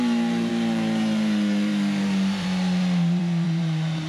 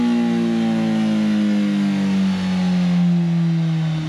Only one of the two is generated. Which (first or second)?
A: first